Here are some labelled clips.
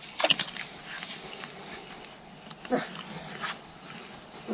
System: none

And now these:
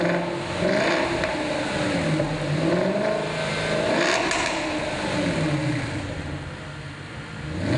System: none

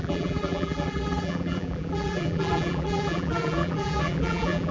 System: vocoder, BigVGAN v2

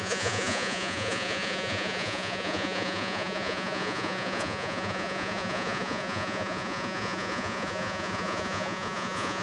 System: vocoder, Vocos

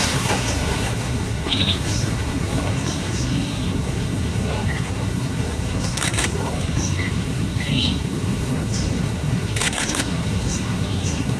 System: codec, SNAC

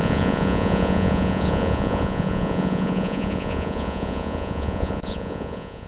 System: vocoder, Vocos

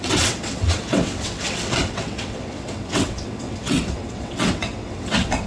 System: vocoder, WaveNeXt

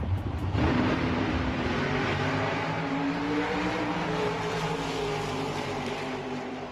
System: vocoder, BigVGAN v2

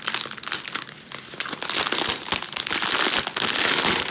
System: none